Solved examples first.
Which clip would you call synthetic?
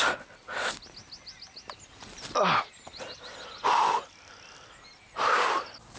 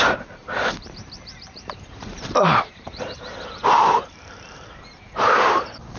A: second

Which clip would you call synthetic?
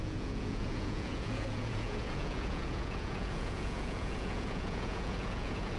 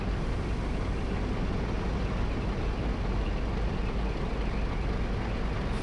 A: first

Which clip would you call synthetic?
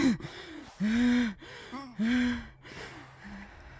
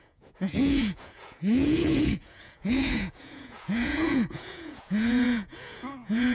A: second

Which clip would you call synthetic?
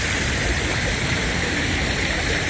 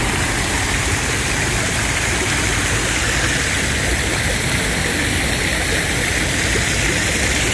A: first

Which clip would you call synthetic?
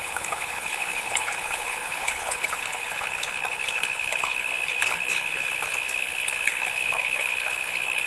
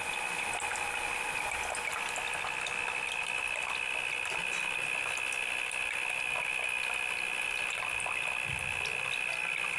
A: first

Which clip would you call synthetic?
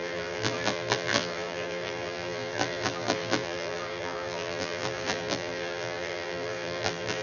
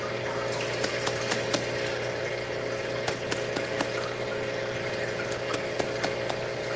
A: first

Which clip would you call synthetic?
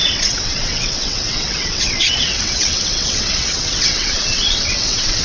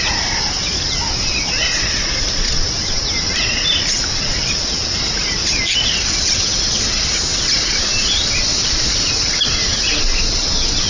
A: first